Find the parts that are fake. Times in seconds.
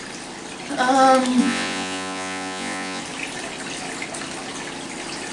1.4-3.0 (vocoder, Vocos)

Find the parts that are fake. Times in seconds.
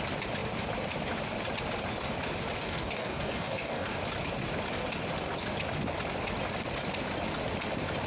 2.6-4.0 (codec, DAC)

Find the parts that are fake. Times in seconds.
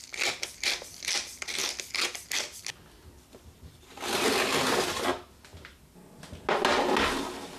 none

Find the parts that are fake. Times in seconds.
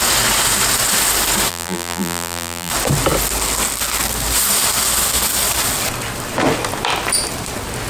1.5-2.7 (vocoder, BigVGAN v2)